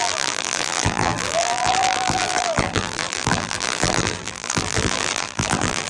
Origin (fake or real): fake